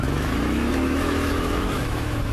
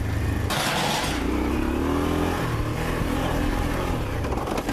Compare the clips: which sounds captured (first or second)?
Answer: second